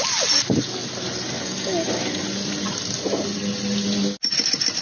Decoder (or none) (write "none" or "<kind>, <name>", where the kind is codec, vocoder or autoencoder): none